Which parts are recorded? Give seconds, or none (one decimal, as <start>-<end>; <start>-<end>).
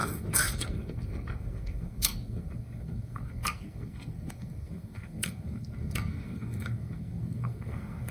none